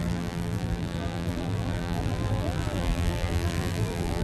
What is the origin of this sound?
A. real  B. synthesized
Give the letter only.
B